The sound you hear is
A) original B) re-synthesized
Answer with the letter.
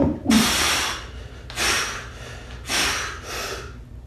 A